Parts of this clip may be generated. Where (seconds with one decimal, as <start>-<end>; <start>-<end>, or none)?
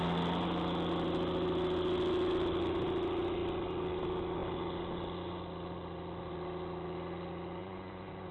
7.6-8.3